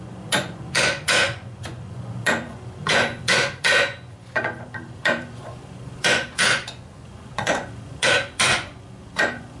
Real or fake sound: fake